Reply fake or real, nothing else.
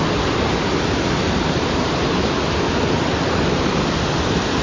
real